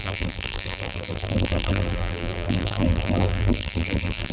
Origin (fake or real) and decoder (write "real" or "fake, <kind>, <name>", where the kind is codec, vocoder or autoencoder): fake, vocoder, BigVGAN v2